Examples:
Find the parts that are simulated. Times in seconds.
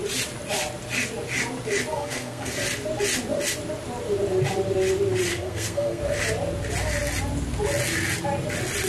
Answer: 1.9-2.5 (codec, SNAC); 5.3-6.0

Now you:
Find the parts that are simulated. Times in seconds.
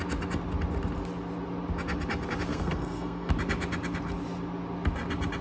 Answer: 2.5-3.3 (codec, SNAC)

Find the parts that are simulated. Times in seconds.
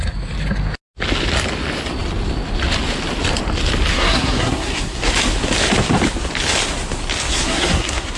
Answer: 3.9-5.1 (codec, SNAC); 7.3-8.2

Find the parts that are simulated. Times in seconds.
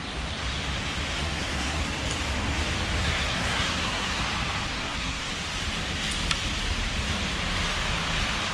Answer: 1.1-1.8 (codec, SNAC); 3.0-4.2; 4.7-5.3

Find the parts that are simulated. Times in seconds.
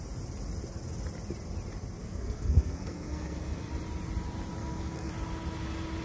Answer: 2.0-3.7 (codec, SNAC); 4.6-5.1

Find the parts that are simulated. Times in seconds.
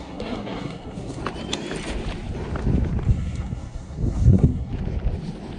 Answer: 0.0-1.2 (codec, SNAC); 3.1-4.7